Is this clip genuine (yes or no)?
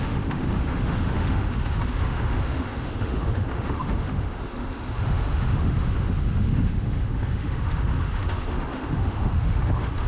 no